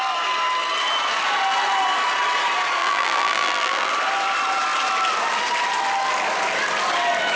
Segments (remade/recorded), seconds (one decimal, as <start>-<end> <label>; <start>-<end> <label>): 0.0-2.8 recorded; 2.8-3.9 remade; 3.9-7.4 recorded